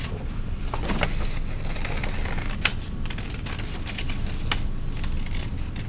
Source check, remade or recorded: recorded